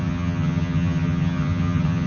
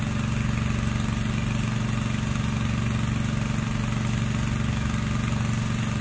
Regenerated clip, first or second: first